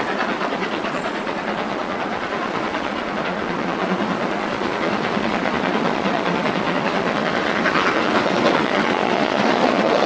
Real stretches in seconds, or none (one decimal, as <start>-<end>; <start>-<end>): none